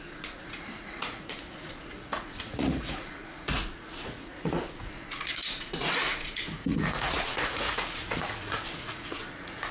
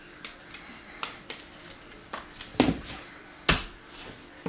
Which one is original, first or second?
second